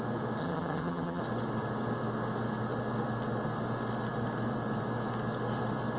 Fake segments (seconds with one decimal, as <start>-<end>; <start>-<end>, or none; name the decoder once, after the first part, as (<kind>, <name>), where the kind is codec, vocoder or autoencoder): 0.4-1.2 (vocoder, HiFi-GAN)